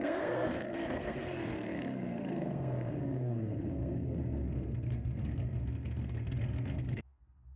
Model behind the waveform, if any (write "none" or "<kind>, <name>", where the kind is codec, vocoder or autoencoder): codec, SNAC